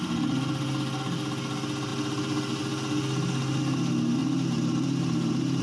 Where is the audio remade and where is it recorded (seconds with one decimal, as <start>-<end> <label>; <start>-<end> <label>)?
0.0-4.2 recorded; 4.2-5.6 remade